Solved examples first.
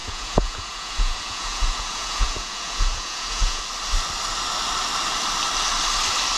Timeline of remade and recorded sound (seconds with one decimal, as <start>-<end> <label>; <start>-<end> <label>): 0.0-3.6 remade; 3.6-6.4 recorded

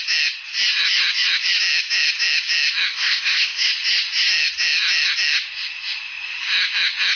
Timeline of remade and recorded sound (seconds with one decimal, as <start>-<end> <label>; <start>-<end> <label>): 0.0-2.9 recorded; 2.9-3.7 remade; 3.7-7.2 recorded

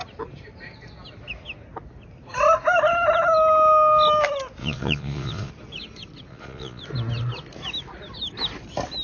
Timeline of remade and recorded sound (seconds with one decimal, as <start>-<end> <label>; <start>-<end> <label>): 0.0-4.6 recorded; 4.6-5.5 remade; 5.5-6.3 recorded; 6.3-6.8 remade; 6.8-9.0 recorded

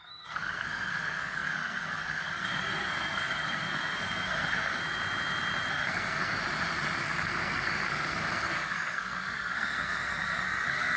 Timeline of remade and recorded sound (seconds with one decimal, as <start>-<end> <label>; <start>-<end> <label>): 0.0-4.8 remade; 4.8-5.7 recorded; 5.7-6.4 remade; 6.4-7.0 recorded; 7.0-11.0 remade

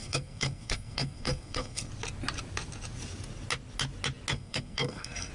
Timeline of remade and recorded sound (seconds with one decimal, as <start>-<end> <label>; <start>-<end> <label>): 0.0-1.9 remade; 1.9-4.3 recorded; 4.3-5.3 remade

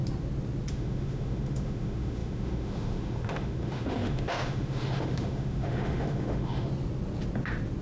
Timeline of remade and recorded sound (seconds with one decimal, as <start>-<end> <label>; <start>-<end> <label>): 0.0-0.7 recorded; 0.7-6.7 remade; 6.7-7.8 recorded